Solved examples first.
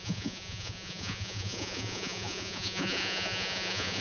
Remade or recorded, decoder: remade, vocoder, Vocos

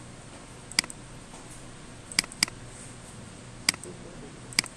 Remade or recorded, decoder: recorded